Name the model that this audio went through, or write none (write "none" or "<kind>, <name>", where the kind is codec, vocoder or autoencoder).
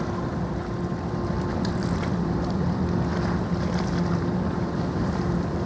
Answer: vocoder, BigVGAN v2